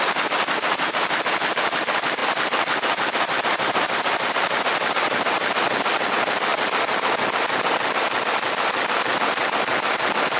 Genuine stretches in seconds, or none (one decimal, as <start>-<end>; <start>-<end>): 0.0-10.4